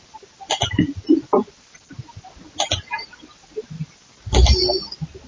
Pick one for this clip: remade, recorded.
recorded